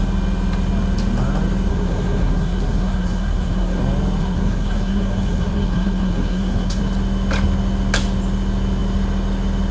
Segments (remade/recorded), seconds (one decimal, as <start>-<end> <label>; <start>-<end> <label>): 0.0-1.7 recorded; 1.7-3.8 remade; 3.8-4.2 recorded; 4.2-6.8 remade; 6.8-9.7 recorded